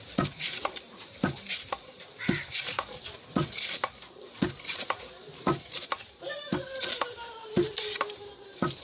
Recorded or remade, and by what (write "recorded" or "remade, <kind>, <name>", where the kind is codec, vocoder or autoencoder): remade, vocoder, BigVGAN v2